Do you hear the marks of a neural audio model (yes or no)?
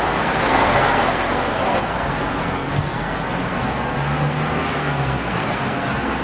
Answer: yes